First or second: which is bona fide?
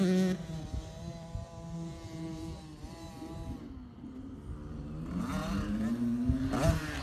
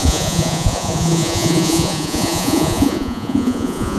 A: first